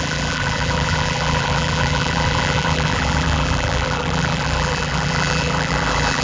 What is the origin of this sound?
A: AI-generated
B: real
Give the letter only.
A